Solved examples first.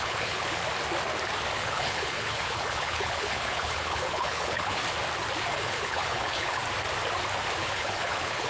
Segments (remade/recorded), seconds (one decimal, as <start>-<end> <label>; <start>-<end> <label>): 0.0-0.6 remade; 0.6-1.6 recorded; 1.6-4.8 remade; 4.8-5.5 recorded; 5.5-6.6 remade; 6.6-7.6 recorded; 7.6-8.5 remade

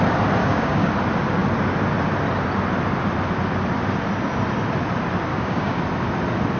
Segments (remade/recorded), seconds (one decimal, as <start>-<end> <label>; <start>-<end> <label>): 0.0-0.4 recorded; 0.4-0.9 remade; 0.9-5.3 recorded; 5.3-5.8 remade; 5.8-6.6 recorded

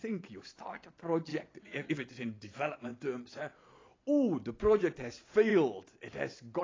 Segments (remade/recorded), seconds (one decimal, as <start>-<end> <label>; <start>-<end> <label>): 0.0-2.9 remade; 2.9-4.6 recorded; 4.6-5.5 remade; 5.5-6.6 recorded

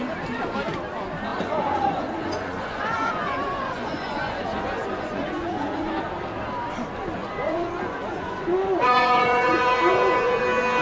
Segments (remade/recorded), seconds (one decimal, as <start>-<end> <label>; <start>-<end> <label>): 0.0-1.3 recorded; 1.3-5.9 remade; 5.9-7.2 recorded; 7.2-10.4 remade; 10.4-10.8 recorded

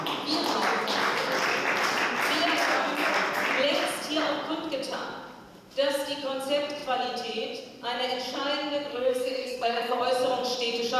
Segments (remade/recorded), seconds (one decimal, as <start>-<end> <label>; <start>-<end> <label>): 0.0-2.6 recorded; 2.6-3.1 remade; 3.1-8.9 recorded; 8.9-10.0 remade; 10.0-11.0 recorded

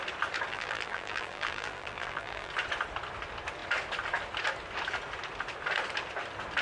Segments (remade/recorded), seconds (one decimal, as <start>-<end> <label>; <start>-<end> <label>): 0.0-0.5 recorded; 0.5-2.5 remade; 2.5-6.6 recorded